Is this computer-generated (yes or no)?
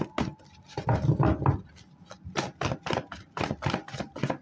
no